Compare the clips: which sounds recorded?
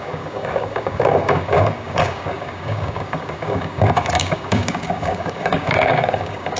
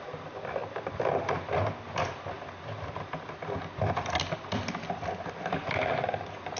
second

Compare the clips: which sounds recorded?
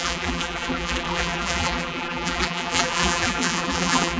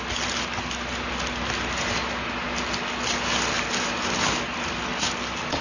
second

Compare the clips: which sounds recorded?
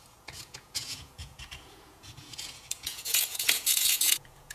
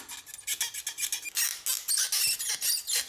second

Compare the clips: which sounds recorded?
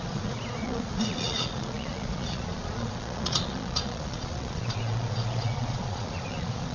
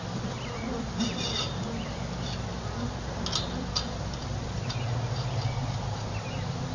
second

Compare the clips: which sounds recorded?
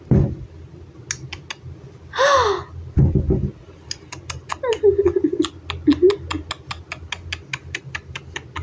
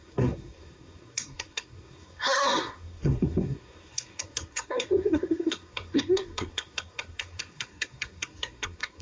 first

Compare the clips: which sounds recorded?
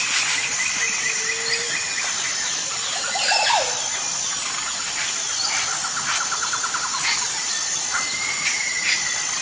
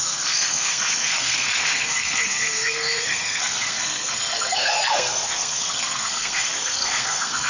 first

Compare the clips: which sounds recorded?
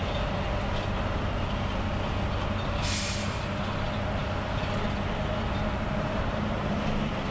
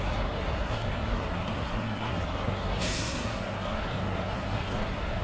first